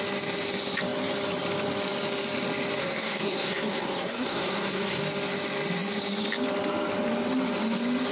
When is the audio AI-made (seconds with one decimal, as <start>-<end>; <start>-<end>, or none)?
2.8-5.0